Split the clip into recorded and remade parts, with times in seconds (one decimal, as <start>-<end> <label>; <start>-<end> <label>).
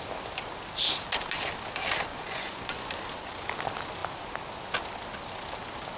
0.0-2.1 recorded; 2.1-2.9 remade; 2.9-6.0 recorded